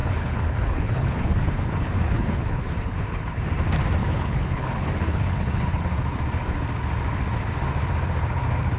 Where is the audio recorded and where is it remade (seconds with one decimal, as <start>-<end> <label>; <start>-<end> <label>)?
0.0-3.4 remade; 3.4-4.0 recorded; 4.0-5.8 remade; 5.8-8.8 recorded